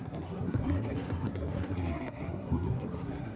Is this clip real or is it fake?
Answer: fake